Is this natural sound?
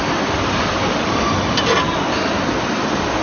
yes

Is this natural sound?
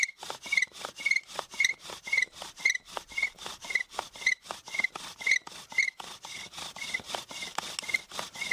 yes